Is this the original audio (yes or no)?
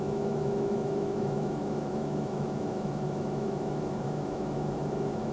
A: no